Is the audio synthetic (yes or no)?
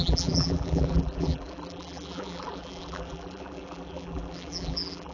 yes